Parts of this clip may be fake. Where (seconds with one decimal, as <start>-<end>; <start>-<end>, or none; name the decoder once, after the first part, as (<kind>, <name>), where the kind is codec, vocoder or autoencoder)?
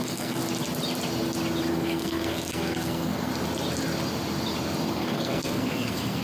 0.0-0.4 (codec, SNAC); 1.7-3.3; 4.9-6.2